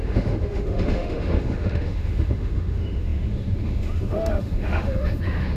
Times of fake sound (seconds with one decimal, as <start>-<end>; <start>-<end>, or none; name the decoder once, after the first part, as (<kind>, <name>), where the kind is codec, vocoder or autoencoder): 0.0-5.6 (autoencoder, DAC-VAE)